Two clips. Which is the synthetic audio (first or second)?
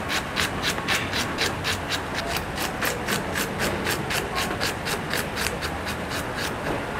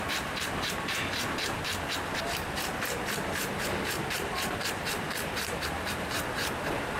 second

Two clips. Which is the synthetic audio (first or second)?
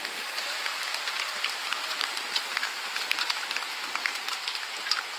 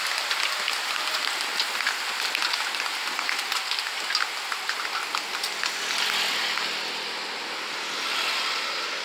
first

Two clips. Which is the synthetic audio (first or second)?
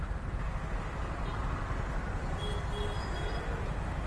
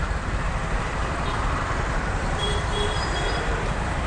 second